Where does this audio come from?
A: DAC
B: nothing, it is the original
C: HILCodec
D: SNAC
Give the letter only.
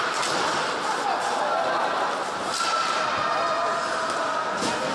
B